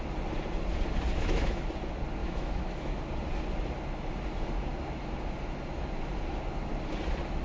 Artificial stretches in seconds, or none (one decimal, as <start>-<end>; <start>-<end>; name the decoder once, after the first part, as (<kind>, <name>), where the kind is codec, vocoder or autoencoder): 1.1-1.6 (autoencoder, DAC-VAE); 2.2-3.0